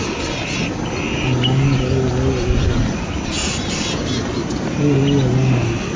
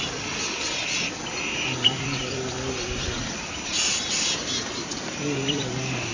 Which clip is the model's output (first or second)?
second